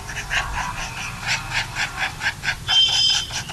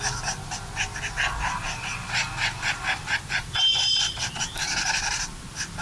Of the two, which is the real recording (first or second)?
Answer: second